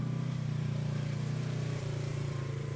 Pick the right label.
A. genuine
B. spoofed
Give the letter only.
B